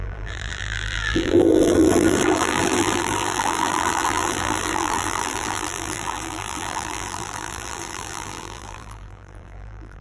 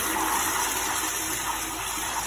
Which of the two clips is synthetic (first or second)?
first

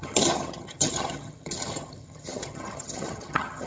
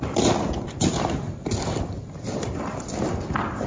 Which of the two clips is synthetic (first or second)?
first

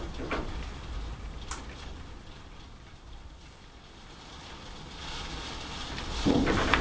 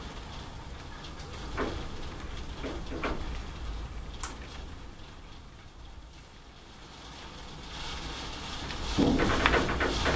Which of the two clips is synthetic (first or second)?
first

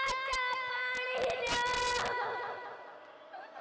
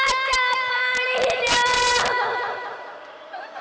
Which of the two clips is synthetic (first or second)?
second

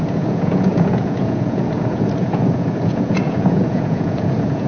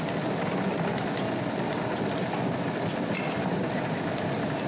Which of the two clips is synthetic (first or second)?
first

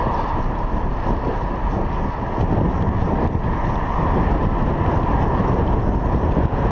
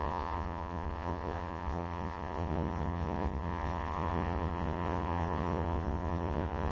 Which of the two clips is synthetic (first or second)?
second